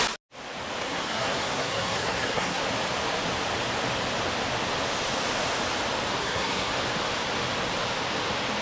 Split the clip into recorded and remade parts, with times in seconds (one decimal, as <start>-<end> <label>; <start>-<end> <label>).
0.0-0.8 recorded; 0.8-2.6 remade; 2.6-6.2 recorded; 6.2-6.7 remade; 6.7-8.6 recorded